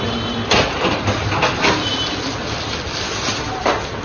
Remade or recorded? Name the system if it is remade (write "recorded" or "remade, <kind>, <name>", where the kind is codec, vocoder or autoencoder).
recorded